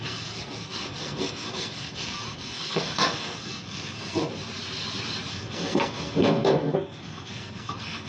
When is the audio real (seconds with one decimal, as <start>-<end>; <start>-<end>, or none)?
4.2-5.3